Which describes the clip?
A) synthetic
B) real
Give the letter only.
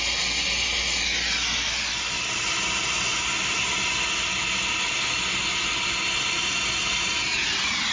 B